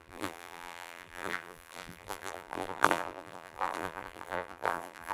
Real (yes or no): no